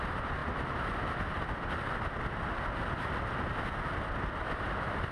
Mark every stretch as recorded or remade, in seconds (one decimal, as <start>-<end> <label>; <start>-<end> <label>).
0.0-5.1 recorded